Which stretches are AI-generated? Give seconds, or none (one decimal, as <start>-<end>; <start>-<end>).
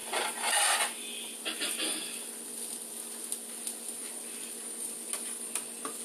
none